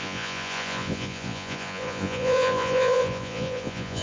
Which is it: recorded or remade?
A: remade